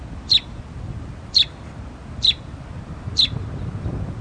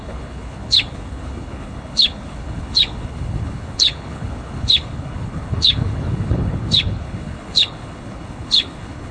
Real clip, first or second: first